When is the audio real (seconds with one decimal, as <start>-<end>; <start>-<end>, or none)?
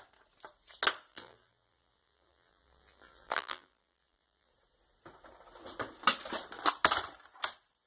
0.0-1.1; 4.5-7.9